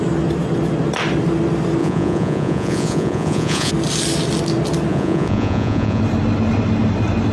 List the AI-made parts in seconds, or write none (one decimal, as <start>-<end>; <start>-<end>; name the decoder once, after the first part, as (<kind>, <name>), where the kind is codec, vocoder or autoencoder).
1.8-3.7 (vocoder, Vocos); 4.9-6.0